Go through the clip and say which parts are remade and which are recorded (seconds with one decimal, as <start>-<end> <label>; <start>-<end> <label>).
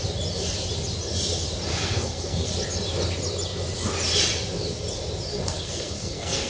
0.0-1.7 recorded; 1.7-2.5 remade; 2.5-5.3 recorded; 5.3-6.5 remade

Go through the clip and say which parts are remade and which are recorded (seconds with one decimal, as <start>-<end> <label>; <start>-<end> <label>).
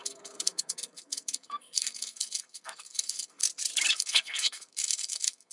0.0-3.4 remade; 3.4-3.9 recorded; 3.9-5.5 remade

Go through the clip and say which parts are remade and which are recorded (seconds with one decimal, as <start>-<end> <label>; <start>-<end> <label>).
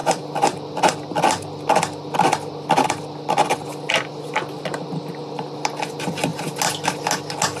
0.0-7.6 recorded